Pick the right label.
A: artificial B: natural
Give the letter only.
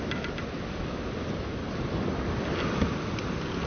B